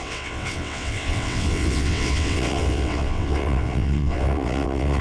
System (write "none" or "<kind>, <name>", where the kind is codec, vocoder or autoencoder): vocoder, WaveNeXt